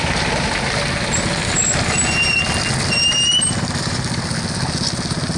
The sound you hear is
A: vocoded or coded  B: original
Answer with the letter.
B